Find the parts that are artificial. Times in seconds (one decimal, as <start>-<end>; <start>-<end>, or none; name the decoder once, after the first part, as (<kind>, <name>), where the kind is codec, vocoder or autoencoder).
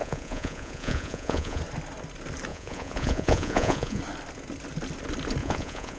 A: 0.0-1.6 (vocoder, Vocos); 2.5-4.0; 5.4-6.0